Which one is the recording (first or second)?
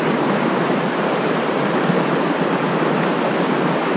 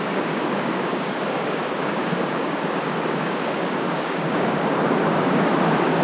first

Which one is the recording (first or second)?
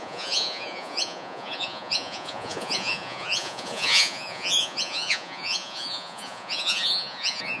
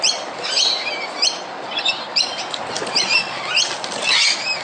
second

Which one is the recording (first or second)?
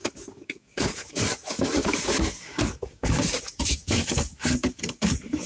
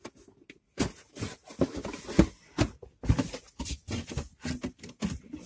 second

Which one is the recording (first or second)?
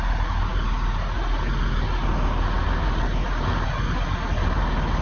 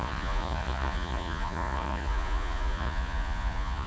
first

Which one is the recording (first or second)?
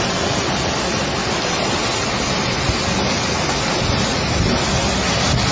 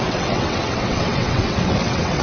first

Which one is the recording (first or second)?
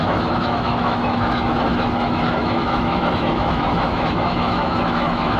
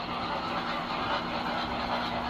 second